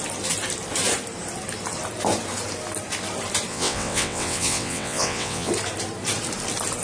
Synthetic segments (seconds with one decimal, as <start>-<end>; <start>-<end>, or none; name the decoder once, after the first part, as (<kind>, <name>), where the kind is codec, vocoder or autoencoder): 3.5-5.5 (vocoder, WaveNeXt)